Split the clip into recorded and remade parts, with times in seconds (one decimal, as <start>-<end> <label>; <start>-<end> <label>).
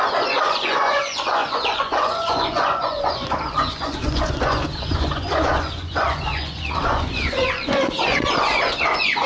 0.0-9.3 remade